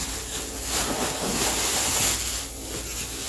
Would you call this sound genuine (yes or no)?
yes